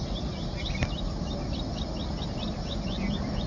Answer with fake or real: real